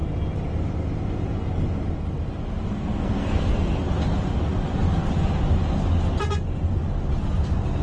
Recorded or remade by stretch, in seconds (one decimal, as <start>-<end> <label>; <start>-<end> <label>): 0.0-2.7 recorded; 2.7-3.7 remade; 3.7-7.8 recorded